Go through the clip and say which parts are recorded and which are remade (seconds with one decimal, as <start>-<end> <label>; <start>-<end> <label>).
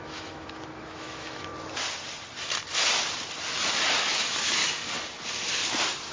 0.0-1.5 remade; 1.5-4.0 recorded; 4.0-4.6 remade; 4.6-6.1 recorded